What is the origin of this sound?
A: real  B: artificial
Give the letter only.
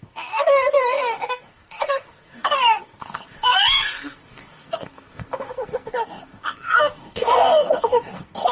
B